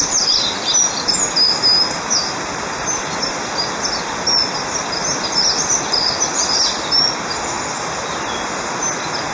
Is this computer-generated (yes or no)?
no